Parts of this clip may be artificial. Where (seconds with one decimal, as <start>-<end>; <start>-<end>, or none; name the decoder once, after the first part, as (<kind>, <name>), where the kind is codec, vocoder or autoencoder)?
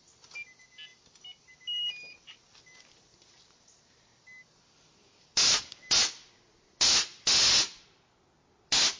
none